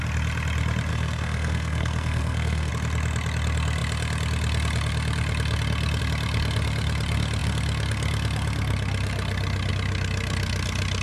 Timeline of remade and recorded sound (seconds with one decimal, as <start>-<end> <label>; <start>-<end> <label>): 0.0-0.9 recorded; 0.9-2.7 remade; 2.7-11.0 recorded